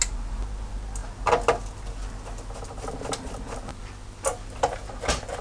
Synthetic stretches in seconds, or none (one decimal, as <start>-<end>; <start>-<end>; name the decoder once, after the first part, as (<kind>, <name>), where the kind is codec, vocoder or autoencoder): none